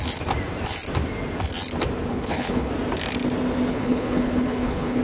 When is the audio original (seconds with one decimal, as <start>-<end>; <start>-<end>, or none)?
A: 0.0-2.1; 2.7-3.7